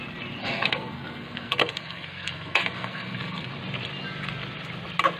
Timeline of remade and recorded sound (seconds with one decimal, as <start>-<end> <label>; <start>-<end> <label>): 0.0-0.4 recorded; 0.4-3.5 remade; 3.5-5.2 recorded